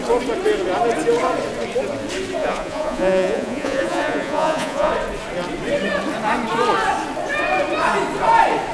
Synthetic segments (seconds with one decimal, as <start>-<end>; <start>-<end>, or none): 2.4-4.9

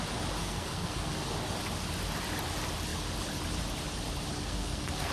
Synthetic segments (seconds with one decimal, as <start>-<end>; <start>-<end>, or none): 0.4-1.3; 4.3-5.1

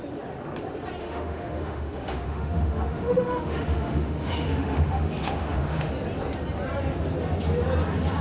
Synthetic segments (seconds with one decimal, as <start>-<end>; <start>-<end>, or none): 1.0-5.9

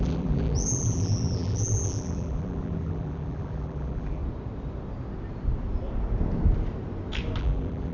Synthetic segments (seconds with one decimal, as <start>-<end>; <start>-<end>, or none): 0.0-4.2; 7.4-7.9

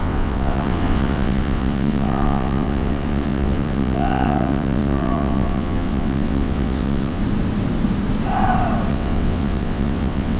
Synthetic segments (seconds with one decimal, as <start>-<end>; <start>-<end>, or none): 0.0-7.2; 8.9-10.4

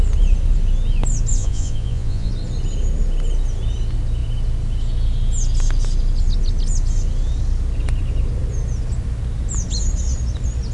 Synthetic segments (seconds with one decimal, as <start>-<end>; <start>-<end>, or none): 1.3-2.3

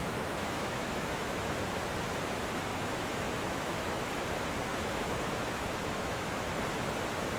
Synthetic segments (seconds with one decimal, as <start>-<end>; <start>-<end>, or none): 0.0-1.5; 2.7-4.1; 4.7-6.5

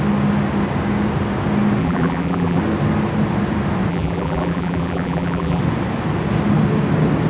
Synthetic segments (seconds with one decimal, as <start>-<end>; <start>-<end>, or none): 1.8-2.6; 3.9-5.6